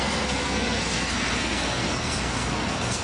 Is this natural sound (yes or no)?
no